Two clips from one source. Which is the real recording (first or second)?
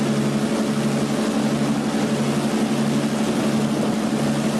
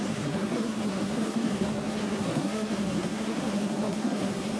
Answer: first